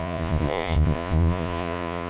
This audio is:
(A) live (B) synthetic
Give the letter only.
B